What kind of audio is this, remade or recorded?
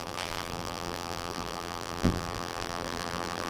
remade